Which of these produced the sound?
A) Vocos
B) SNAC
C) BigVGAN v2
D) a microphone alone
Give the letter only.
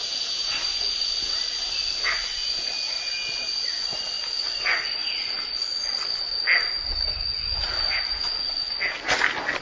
D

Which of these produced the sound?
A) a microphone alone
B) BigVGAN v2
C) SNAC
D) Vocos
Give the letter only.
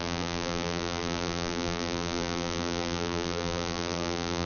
B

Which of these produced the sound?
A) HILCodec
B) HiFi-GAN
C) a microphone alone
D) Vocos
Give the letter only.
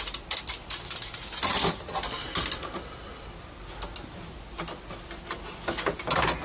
C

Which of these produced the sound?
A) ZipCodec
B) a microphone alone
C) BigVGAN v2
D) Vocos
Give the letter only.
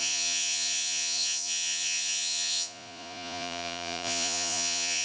D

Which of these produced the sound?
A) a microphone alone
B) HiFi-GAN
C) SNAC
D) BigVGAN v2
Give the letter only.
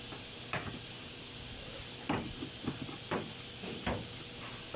A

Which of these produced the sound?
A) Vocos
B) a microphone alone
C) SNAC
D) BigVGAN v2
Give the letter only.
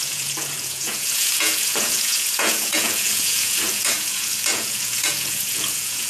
A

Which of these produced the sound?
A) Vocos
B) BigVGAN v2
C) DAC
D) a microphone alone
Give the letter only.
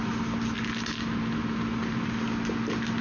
D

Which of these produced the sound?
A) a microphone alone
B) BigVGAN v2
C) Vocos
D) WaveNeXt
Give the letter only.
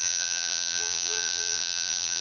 B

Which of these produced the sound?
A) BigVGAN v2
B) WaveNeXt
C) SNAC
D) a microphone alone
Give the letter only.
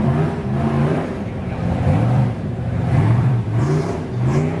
A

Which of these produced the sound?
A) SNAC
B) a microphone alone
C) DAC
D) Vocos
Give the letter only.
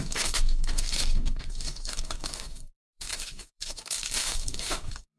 C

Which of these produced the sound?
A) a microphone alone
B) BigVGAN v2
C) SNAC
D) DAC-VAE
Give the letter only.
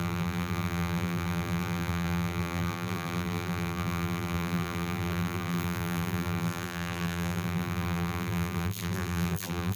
B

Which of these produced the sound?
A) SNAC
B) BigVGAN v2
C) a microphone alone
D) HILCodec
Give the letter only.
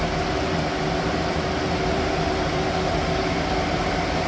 B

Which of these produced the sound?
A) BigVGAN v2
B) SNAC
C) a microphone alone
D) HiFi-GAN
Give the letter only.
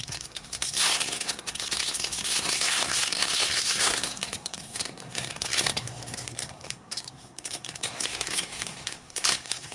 B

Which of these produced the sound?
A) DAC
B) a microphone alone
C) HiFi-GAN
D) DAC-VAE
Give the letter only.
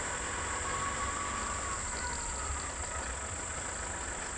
B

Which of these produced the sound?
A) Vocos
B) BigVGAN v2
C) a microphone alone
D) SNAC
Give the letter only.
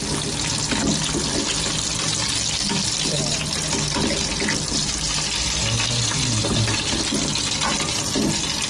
C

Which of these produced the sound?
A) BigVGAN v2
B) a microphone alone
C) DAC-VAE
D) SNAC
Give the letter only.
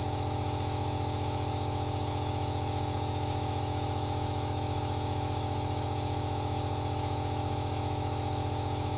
C